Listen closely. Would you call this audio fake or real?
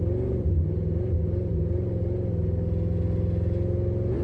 real